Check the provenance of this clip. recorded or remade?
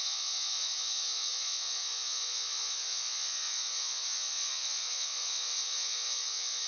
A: remade